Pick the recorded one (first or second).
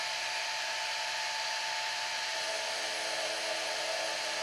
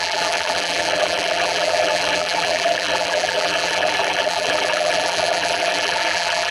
first